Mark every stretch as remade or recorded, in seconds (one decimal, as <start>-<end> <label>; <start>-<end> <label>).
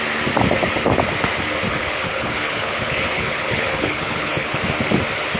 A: 0.0-1.7 recorded; 1.7-4.6 remade; 4.6-5.4 recorded